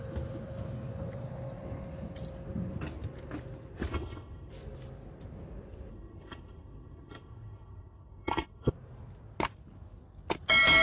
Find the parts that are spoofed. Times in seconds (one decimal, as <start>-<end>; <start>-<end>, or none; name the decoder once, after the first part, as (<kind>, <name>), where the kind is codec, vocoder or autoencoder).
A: 3.9-4.5 (codec, HILCodec); 5.9-8.7